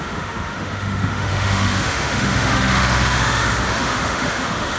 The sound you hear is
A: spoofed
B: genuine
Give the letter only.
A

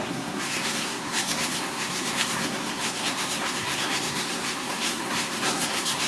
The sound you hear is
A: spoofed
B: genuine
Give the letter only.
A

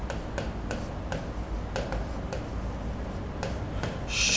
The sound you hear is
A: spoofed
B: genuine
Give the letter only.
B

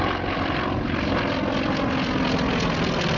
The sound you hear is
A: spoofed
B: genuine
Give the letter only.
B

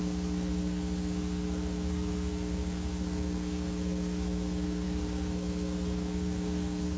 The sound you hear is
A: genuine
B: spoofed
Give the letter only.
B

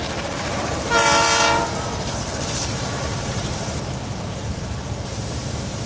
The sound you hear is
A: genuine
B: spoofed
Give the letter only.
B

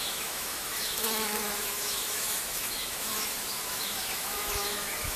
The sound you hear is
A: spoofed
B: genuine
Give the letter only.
A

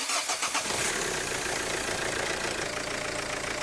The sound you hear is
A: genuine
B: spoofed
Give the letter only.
A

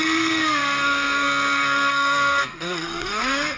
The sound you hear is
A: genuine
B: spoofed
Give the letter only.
B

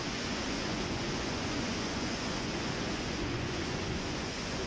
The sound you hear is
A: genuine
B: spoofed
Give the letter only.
B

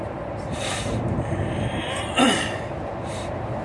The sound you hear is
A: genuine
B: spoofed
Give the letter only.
B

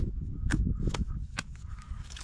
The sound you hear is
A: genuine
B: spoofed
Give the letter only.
B